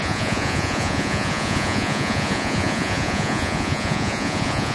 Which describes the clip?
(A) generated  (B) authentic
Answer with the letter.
A